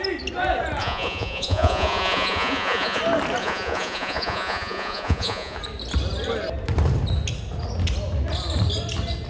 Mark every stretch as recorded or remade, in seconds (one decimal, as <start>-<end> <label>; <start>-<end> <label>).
0.0-0.8 recorded; 0.8-3.0 remade; 3.0-3.4 recorded; 3.4-5.6 remade; 5.6-9.3 recorded